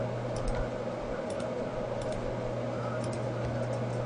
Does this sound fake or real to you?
real